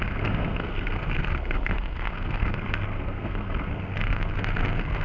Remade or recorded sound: remade